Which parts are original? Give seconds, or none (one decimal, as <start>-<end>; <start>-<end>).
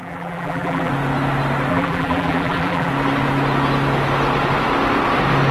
0.9-1.7; 2.9-5.5